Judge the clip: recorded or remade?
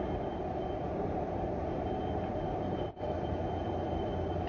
remade